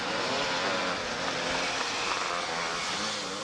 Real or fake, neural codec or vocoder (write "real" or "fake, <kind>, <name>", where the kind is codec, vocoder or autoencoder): real